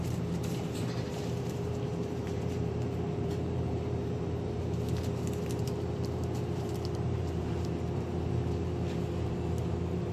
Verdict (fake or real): fake